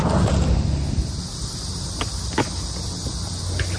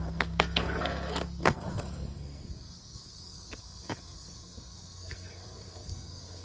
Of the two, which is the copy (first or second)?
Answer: second